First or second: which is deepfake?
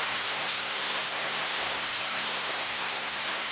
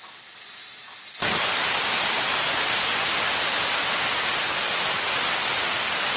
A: first